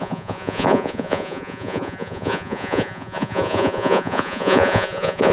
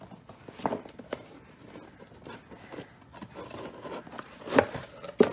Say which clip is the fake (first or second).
first